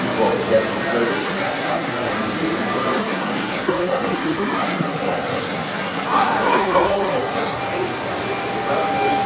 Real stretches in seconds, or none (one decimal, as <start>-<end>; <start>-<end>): 0.0-1.1; 2.1-3.0; 7.6-9.3